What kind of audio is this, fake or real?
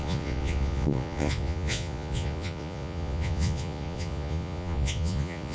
fake